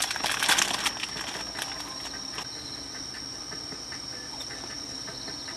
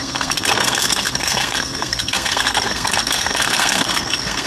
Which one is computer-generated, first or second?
second